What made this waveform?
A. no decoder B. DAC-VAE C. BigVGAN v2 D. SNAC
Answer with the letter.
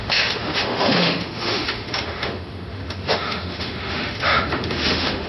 B